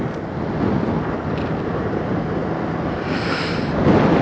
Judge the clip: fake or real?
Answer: real